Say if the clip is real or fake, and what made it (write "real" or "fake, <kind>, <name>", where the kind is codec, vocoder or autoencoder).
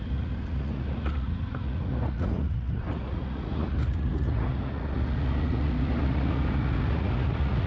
fake, vocoder, Vocos